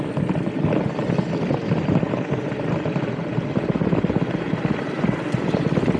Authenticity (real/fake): fake